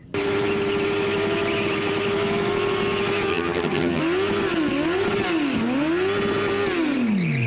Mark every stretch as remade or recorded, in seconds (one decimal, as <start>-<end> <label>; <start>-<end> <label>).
0.0-3.3 recorded; 3.3-4.0 remade; 4.0-7.5 recorded